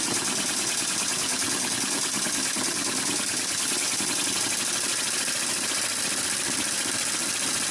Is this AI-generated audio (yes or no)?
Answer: no